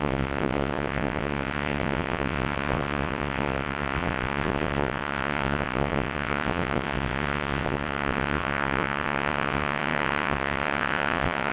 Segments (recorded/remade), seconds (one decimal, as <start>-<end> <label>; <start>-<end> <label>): 0.0-11.5 remade